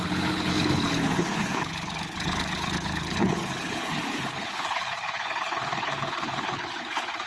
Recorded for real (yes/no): no